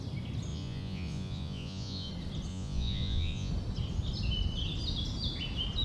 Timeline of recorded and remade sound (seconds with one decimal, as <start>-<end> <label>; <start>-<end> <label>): 0.0-0.5 recorded; 0.5-2.1 remade; 2.1-2.5 recorded; 2.5-3.5 remade; 3.5-5.8 recorded